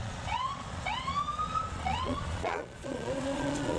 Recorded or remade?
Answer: remade